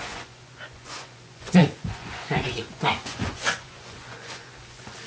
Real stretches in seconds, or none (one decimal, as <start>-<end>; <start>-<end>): none